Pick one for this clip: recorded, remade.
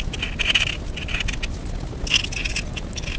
recorded